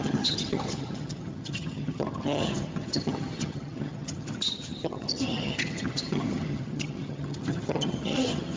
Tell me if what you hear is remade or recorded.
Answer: remade